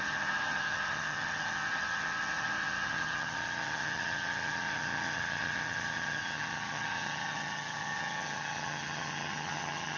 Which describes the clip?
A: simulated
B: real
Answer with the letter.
A